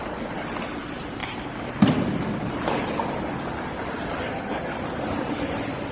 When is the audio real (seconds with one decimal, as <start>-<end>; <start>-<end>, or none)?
none